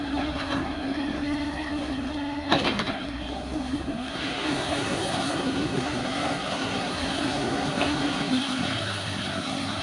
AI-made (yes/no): yes